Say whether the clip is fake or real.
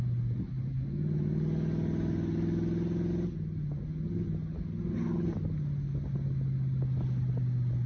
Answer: real